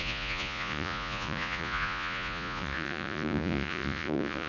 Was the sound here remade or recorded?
remade